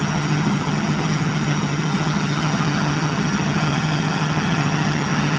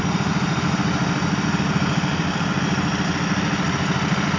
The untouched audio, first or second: second